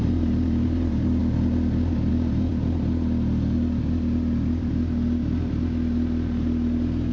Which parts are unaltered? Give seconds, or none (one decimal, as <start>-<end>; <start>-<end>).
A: 1.2-2.1; 2.5-7.1